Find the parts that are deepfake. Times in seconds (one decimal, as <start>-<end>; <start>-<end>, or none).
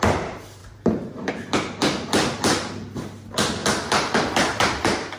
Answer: 0.6-1.3